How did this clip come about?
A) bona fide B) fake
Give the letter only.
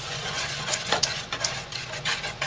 B